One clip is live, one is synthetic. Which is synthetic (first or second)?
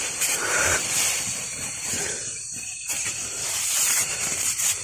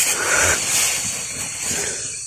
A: first